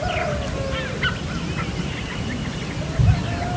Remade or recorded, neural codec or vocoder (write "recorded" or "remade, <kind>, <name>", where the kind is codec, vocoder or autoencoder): recorded